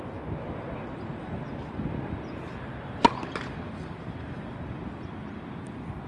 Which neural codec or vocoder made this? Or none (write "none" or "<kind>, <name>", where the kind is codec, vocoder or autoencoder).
none